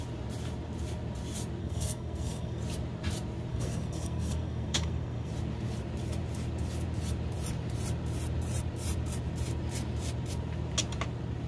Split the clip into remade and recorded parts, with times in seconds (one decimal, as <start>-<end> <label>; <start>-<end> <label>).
0.0-1.6 recorded; 1.6-2.6 remade; 2.6-3.5 recorded; 3.5-5.3 remade; 5.3-11.5 recorded